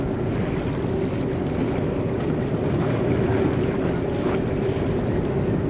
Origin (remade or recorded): recorded